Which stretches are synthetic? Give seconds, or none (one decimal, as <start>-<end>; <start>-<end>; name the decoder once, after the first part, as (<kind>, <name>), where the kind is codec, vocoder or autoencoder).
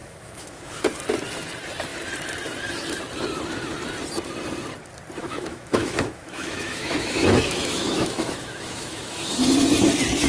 0.0-0.8 (autoencoder, DAC-VAE); 5.2-9.3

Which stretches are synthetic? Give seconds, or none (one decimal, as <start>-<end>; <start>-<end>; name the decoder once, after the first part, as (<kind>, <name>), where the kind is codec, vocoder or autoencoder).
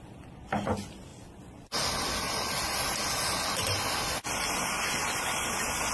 none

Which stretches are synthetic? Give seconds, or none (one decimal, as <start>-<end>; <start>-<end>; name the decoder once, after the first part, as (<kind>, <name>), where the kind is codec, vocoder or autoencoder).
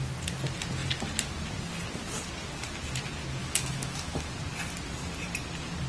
3.4-4.3 (autoencoder, DAC-VAE)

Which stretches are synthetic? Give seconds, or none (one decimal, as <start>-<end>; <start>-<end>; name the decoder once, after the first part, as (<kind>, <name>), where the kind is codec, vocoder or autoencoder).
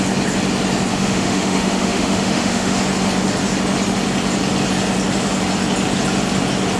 0.9-2.8 (autoencoder, DAC-VAE)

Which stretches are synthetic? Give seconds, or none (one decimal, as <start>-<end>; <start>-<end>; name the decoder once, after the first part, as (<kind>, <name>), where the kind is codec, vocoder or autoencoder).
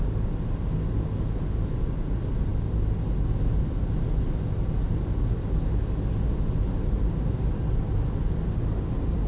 none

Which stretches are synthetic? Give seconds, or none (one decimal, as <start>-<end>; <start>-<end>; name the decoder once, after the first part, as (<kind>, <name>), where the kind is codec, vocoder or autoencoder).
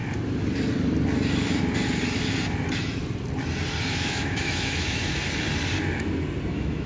3.9-5.2 (autoencoder, DAC-VAE); 6.5-6.9